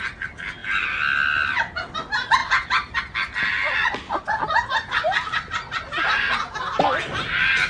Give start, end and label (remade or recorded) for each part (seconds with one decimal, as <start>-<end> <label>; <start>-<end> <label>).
0.0-7.7 recorded

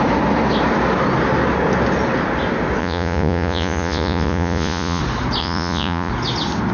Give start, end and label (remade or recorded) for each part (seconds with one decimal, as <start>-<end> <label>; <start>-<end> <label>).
0.0-2.8 recorded; 2.8-5.0 remade; 5.0-5.4 recorded; 5.4-6.1 remade; 6.1-6.7 recorded

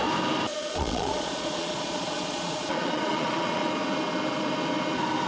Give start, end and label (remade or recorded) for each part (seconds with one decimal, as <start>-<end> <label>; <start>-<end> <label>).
0.0-0.5 recorded; 0.5-3.7 remade; 3.7-5.3 recorded

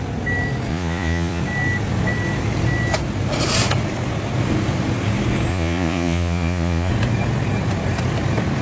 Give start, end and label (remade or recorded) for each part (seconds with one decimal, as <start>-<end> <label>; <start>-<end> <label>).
0.0-0.7 recorded; 0.7-1.4 remade; 1.4-5.5 recorded; 5.5-6.9 remade; 6.9-8.6 recorded

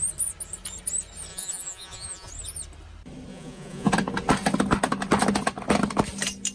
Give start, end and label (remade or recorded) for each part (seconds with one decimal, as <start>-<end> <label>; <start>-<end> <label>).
0.0-1.3 recorded; 1.3-2.3 remade; 2.3-3.3 recorded; 3.3-3.9 remade; 3.9-6.5 recorded